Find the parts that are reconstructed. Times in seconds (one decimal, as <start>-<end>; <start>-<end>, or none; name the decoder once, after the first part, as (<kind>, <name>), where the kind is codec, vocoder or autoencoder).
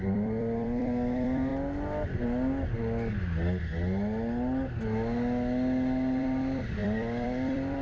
0.0-1.5 (vocoder, BigVGAN v2); 6.2-7.8